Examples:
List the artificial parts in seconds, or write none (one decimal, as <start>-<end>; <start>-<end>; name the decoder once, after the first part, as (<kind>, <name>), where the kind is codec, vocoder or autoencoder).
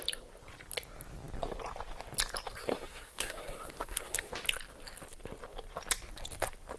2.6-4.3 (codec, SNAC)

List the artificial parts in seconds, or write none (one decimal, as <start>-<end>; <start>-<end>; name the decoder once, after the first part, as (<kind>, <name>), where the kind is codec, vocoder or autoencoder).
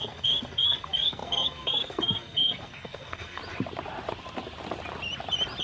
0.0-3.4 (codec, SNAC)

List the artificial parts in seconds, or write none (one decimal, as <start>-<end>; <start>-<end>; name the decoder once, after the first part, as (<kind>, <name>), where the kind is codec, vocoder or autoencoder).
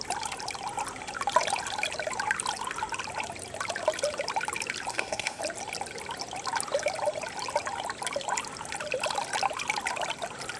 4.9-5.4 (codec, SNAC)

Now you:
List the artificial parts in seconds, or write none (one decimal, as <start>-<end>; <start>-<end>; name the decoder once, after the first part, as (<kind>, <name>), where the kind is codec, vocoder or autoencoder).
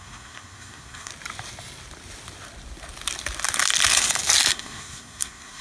0.0-1.1 (codec, SNAC); 4.5-5.6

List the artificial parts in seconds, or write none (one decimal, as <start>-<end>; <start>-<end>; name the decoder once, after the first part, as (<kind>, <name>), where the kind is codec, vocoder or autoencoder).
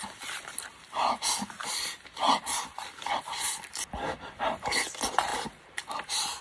none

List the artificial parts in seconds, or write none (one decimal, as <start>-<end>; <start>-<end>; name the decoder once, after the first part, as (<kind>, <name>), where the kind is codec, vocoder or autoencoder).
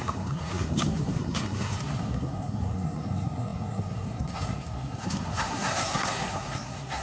0.0-7.0 (codec, SNAC)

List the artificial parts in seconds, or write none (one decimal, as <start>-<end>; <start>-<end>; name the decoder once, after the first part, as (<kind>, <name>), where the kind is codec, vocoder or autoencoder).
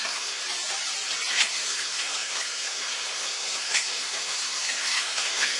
0.0-0.4 (codec, SNAC); 1.3-5.6